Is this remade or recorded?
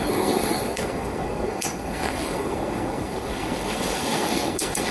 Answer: remade